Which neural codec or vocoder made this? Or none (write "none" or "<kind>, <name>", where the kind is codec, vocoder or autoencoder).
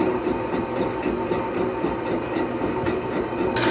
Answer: none